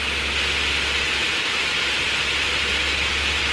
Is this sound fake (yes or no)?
no